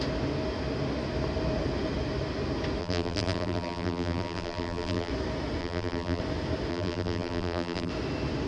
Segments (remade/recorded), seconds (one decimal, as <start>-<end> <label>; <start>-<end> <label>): 0.0-2.8 recorded; 2.8-5.1 remade; 5.1-5.6 recorded; 5.6-6.2 remade; 6.2-6.7 recorded; 6.7-7.9 remade; 7.9-8.5 recorded